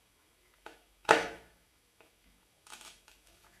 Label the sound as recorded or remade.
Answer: remade